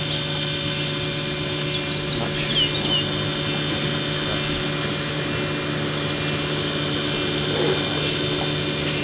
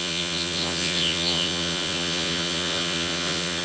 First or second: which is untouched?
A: first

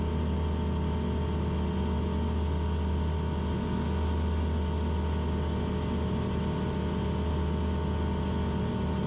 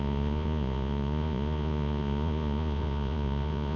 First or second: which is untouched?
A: first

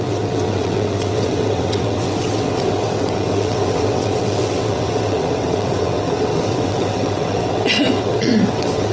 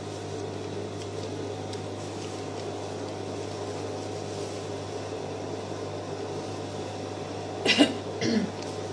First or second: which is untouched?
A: second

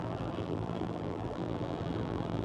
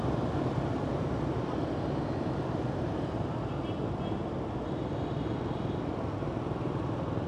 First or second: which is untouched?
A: second